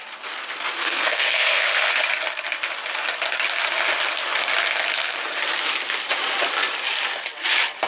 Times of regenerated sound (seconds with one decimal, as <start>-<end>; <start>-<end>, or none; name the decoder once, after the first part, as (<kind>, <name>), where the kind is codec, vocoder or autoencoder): 0.8-1.9 (codec, SNAC)